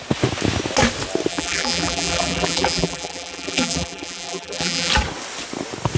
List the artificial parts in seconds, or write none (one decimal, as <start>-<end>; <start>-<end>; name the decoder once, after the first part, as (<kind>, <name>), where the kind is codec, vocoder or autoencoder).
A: 1.3-4.9 (vocoder, BigVGAN v2)